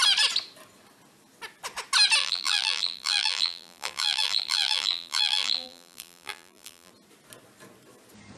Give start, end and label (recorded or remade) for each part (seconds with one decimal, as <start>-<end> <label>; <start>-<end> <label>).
0.0-2.2 recorded; 2.2-6.9 remade; 6.9-8.4 recorded